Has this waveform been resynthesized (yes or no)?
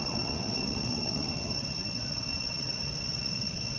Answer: yes